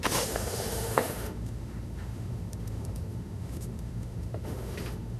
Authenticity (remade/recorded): remade